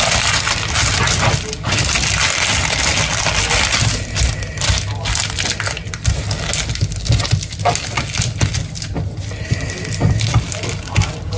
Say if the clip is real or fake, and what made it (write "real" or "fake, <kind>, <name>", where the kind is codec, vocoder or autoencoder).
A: real